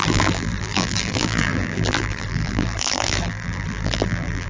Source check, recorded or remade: remade